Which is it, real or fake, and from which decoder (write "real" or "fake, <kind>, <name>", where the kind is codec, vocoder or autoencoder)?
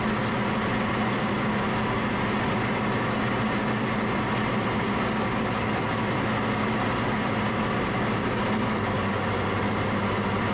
real